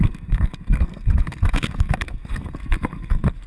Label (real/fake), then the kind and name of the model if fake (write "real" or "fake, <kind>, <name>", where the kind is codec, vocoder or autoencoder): fake, codec, SNAC